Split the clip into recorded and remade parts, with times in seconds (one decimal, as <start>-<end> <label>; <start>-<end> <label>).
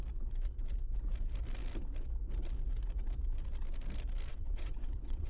0.0-4.3 recorded; 4.3-5.3 remade